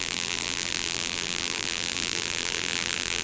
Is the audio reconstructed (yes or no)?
yes